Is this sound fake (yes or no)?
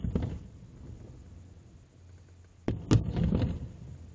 no